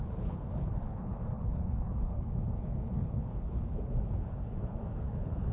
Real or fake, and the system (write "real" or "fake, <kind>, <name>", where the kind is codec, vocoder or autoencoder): fake, codec, HILCodec